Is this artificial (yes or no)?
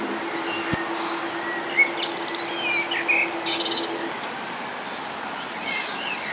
no